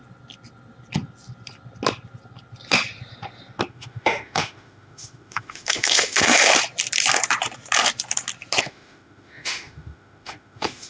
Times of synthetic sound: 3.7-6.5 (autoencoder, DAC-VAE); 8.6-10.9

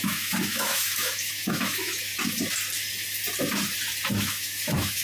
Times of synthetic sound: 0.0-2.1 (autoencoder, DAC-VAE); 4.1-5.0